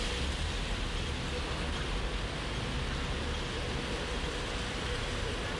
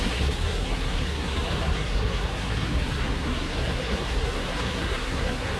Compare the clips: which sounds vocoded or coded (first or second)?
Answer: second